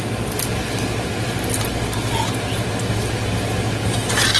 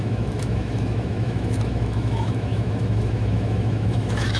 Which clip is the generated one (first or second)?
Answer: second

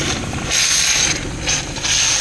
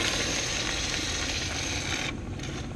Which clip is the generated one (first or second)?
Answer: first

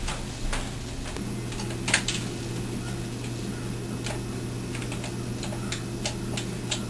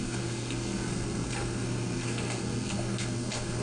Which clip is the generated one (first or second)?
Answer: second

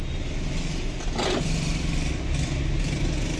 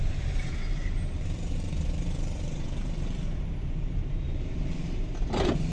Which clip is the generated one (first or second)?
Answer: second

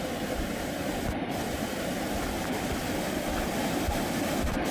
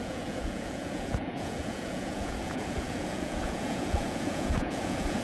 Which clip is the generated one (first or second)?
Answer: second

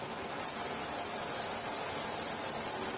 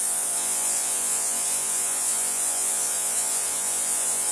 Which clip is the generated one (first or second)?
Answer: second